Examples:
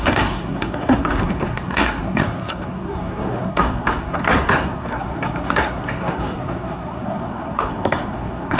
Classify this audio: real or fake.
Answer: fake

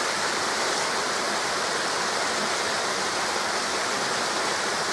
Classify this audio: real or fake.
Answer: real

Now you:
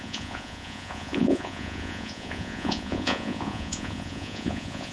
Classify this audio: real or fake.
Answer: fake